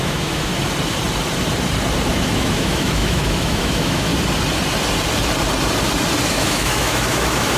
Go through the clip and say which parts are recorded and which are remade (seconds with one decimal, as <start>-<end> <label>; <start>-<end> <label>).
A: 0.0-0.5 remade; 0.5-2.1 recorded; 2.1-4.1 remade; 4.1-6.3 recorded; 6.3-7.6 remade

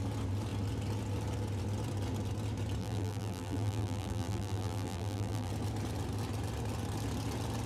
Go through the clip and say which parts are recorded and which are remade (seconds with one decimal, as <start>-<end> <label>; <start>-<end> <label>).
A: 0.0-2.8 recorded; 2.8-5.5 remade; 5.5-7.7 recorded

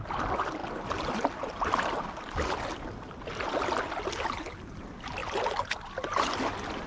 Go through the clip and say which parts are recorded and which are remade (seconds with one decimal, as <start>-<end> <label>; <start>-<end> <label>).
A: 0.0-6.9 recorded

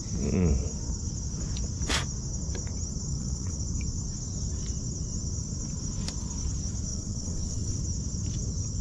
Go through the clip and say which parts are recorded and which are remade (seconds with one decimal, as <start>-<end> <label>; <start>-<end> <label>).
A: 0.0-3.1 recorded; 3.1-3.6 remade; 3.6-6.9 recorded; 6.9-7.8 remade; 7.8-8.8 recorded

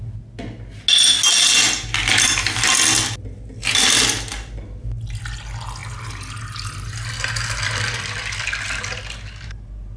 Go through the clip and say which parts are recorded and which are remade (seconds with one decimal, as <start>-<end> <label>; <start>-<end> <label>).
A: 0.0-10.0 recorded

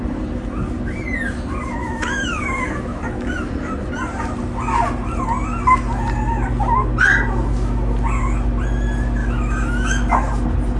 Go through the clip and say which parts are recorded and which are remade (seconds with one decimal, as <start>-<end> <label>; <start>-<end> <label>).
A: 0.0-1.8 recorded; 1.8-3.0 remade; 3.0-9.2 recorded; 9.2-10.1 remade; 10.1-10.8 recorded

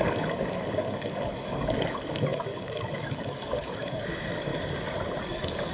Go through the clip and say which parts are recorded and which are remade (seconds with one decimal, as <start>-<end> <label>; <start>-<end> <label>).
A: 0.0-4.5 remade; 4.5-5.2 recorded; 5.2-5.7 remade